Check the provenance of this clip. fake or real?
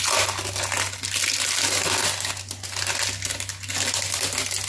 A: real